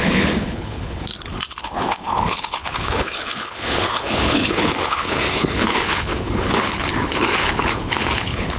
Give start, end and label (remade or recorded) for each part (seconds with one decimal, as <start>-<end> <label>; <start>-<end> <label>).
0.0-1.1 remade; 1.1-1.6 recorded; 1.6-8.6 remade